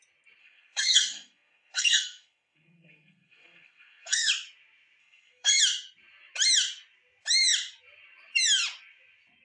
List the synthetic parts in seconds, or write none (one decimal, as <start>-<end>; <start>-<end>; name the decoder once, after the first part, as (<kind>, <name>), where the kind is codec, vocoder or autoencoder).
0.4-4.3 (codec, SNAC); 5.0-5.6